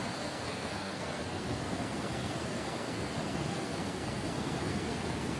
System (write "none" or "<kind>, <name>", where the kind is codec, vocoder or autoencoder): codec, SNAC